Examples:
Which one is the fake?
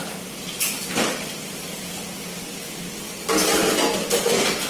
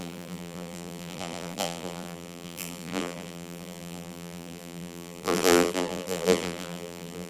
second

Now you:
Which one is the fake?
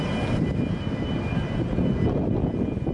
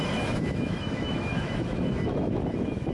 second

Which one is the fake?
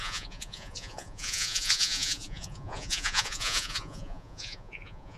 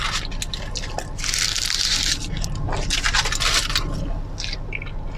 first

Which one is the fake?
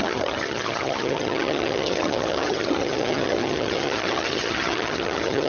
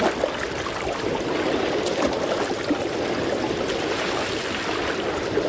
first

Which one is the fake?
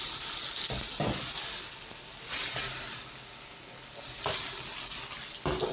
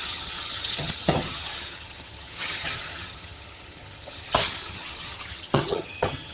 second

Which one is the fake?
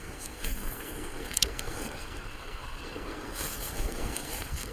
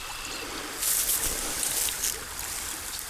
first